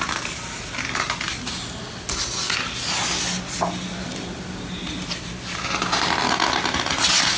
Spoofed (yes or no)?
no